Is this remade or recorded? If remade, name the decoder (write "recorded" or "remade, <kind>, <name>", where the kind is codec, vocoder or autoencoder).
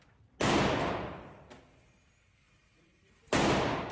recorded